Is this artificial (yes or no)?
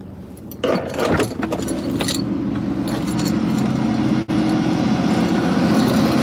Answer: no